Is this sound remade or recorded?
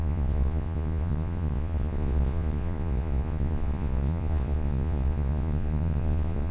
remade